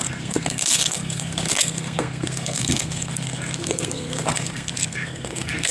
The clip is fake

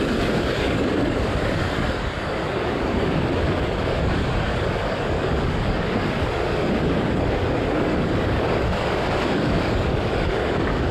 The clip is fake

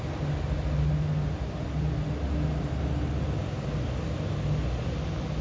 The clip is real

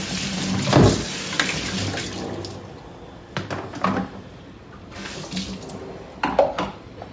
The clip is real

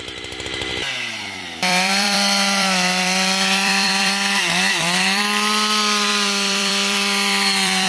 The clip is fake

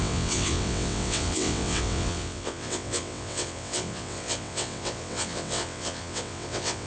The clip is fake